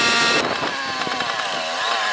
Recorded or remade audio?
recorded